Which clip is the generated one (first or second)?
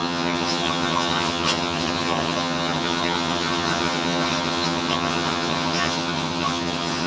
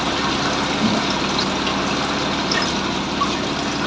first